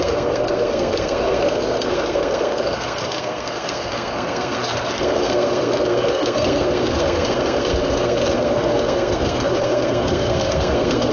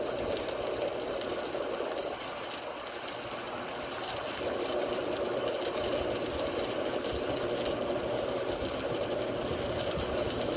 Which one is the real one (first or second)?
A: second